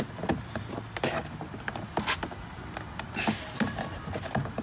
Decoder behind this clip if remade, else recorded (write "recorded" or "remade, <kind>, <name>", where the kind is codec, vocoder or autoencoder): recorded